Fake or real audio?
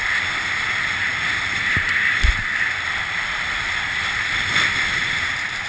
real